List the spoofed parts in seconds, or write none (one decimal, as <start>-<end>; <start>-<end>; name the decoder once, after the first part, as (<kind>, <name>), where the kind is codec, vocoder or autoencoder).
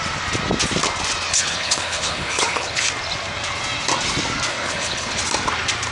1.3-2.9 (codec, HILCodec); 4.5-5.2